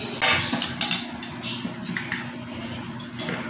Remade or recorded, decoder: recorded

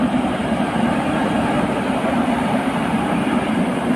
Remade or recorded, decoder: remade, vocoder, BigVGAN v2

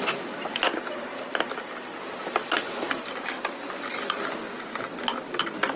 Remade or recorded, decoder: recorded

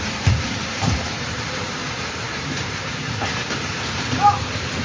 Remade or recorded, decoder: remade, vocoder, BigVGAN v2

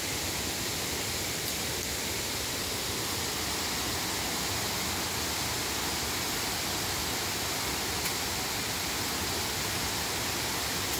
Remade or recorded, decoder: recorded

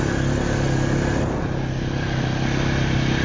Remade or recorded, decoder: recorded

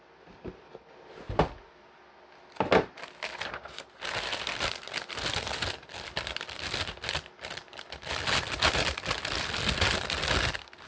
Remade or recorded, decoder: recorded